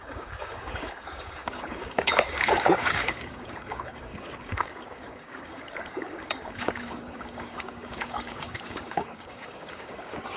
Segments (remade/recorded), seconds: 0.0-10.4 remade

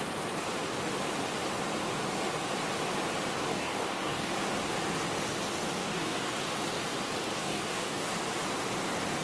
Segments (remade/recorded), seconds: 0.0-3.5 recorded; 3.5-4.3 remade; 4.3-5.8 recorded; 5.8-6.3 remade; 6.3-7.4 recorded; 7.4-8.1 remade; 8.1-9.2 recorded

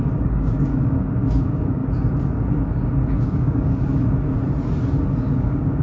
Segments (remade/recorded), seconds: 0.0-1.8 remade; 1.8-3.2 recorded; 3.2-4.0 remade; 4.0-5.2 recorded; 5.2-5.8 remade

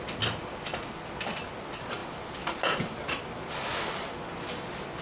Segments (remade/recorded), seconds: 0.0-5.0 recorded

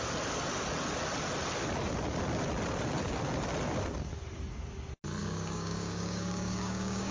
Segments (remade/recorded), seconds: 0.0-5.2 recorded; 5.2-7.1 remade

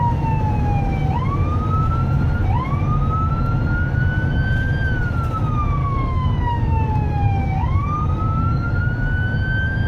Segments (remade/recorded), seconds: 0.0-5.8 recorded; 5.8-8.8 remade; 8.8-9.9 recorded

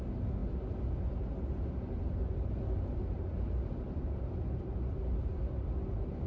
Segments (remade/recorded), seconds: 0.0-6.3 recorded